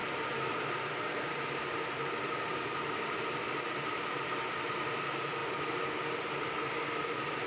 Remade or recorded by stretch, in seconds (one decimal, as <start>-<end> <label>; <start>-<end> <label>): 0.0-4.5 remade; 4.5-7.5 recorded